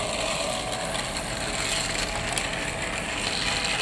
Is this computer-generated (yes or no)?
no